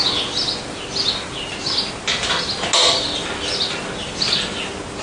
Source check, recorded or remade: recorded